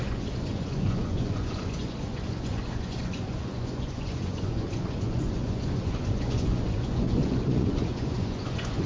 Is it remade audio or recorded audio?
remade